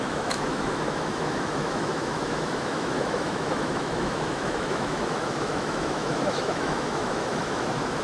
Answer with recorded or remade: remade